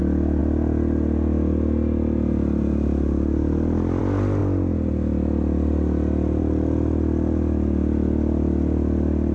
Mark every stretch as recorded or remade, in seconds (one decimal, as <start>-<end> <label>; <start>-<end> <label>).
0.0-9.3 recorded